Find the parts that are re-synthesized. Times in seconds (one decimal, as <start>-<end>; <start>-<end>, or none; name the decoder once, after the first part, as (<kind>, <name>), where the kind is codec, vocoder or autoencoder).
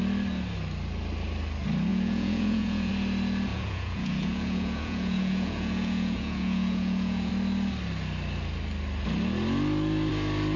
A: 1.9-2.9 (vocoder, Vocos); 3.5-7.3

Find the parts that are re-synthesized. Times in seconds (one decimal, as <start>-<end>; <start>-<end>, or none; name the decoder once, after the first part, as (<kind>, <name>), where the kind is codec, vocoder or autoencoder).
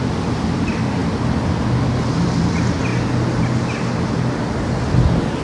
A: 0.0-2.9 (vocoder, BigVGAN v2); 4.6-5.4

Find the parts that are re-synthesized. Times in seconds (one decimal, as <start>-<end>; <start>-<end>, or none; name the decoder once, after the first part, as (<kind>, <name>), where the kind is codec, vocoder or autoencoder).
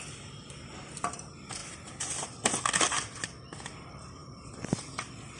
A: none